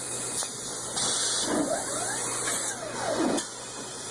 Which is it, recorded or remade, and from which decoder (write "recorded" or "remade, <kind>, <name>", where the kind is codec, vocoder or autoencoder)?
remade, vocoder, Vocos